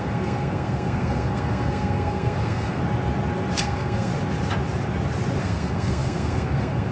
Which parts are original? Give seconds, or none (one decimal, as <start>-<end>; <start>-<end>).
2.8-3.6; 4.1-5.4